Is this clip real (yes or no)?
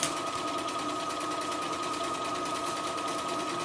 yes